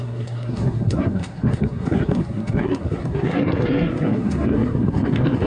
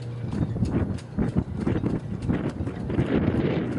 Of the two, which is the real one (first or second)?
second